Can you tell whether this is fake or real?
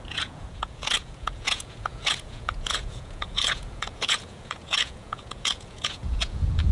fake